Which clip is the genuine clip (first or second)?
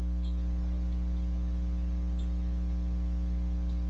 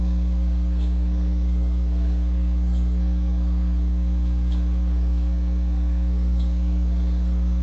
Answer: first